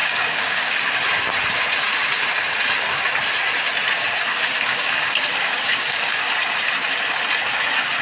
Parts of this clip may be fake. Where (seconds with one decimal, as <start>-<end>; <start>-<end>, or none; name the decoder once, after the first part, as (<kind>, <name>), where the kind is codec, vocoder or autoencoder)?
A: 0.0-0.9 (codec, DAC); 4.3-6.3